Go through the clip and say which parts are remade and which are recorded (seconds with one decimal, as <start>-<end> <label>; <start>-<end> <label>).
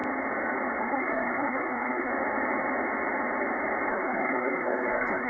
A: 0.0-0.8 recorded; 0.8-2.1 remade; 2.1-3.9 recorded; 3.9-5.3 remade